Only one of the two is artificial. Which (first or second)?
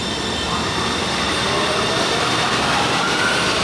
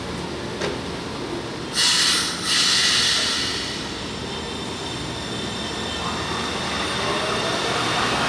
first